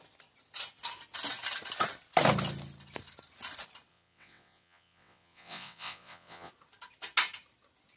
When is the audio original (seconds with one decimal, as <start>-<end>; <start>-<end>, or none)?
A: 0.0-3.9; 6.5-8.0